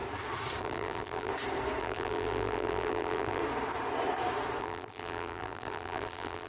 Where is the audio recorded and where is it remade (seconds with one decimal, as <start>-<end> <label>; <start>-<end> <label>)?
0.0-0.6 recorded; 0.6-1.3 remade; 1.3-1.8 recorded; 1.8-3.4 remade; 3.4-4.6 recorded; 4.6-6.5 remade